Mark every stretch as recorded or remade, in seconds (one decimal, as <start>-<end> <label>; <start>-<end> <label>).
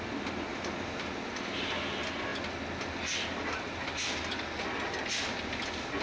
0.0-0.5 recorded; 0.5-1.7 remade; 1.7-6.0 recorded